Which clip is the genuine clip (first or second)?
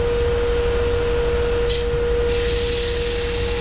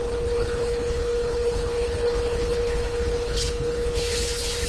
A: first